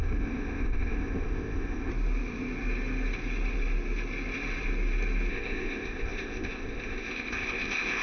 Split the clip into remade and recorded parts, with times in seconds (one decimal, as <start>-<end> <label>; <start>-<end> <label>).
0.0-1.9 remade; 1.9-5.3 recorded; 5.3-8.0 remade